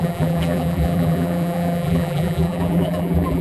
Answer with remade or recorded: remade